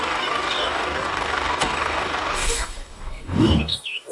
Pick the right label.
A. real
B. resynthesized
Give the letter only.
B